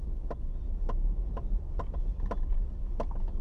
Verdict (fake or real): real